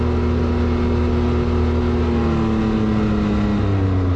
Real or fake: real